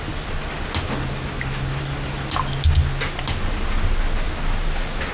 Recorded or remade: recorded